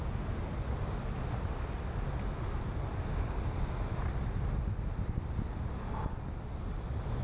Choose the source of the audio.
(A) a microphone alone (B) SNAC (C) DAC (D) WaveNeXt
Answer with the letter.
A